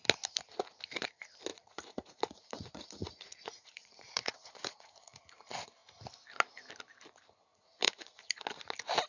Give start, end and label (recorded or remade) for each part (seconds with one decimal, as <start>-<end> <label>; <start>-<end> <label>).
0.0-1.5 recorded; 1.5-5.3 remade; 5.3-7.5 recorded; 7.5-8.3 remade; 8.3-9.1 recorded